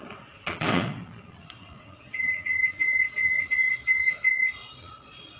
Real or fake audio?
fake